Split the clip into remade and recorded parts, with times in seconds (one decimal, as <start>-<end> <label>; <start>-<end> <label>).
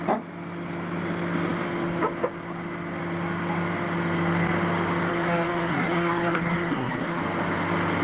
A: 0.0-5.1 recorded; 5.1-7.2 remade; 7.2-8.0 recorded